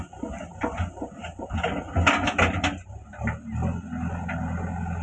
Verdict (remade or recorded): recorded